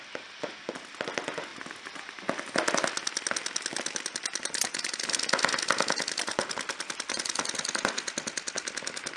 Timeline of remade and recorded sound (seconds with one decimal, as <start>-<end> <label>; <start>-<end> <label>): 0.0-1.5 recorded; 1.5-2.5 remade; 2.5-9.2 recorded